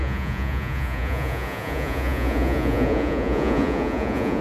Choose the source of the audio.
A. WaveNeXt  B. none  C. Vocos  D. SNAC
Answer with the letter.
C